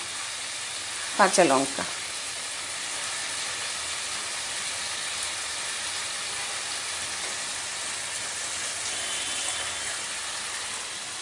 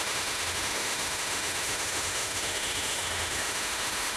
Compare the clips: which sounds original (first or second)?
first